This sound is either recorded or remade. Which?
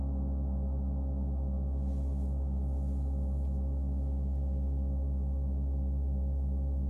recorded